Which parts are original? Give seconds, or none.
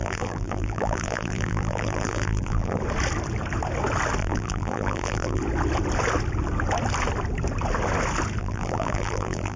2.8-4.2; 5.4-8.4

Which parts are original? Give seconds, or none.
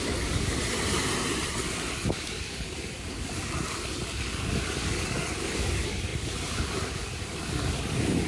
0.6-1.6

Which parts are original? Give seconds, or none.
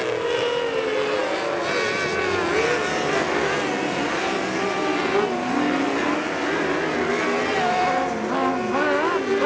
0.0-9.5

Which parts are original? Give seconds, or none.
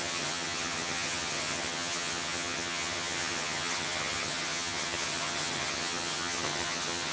none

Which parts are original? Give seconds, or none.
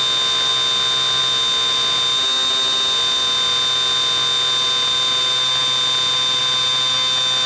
0.0-7.5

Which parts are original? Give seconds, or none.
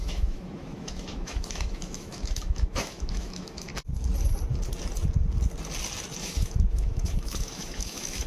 3.7-6.2